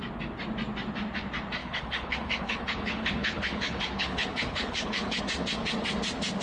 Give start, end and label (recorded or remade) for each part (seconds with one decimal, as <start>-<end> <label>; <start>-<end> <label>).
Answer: 0.0-1.6 recorded; 1.6-5.2 remade; 5.2-6.4 recorded